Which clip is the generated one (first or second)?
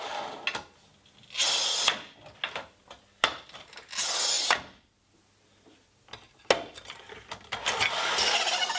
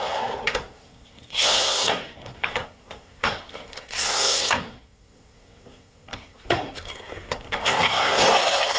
second